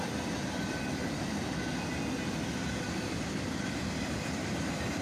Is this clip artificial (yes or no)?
no